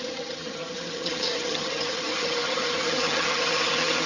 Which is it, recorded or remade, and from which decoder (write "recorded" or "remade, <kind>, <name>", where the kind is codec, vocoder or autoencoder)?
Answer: remade, vocoder, HiFi-GAN